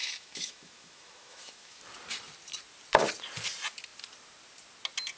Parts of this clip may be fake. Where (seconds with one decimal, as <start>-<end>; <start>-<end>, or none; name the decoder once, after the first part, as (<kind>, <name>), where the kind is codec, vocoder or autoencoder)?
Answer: 0.0-1.8 (autoencoder, DAC-VAE)